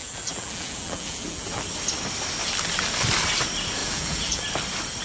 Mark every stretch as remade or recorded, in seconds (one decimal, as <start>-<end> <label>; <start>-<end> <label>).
0.0-1.6 remade; 1.6-3.8 recorded; 3.8-4.4 remade; 4.4-5.0 recorded